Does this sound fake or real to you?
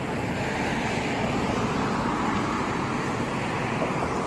real